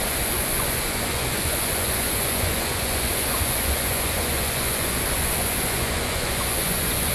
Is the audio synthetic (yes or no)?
yes